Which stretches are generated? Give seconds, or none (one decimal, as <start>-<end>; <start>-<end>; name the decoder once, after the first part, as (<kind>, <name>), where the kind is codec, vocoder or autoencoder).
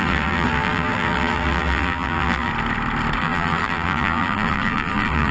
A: 0.0-2.5 (vocoder, BigVGAN v2); 3.2-5.3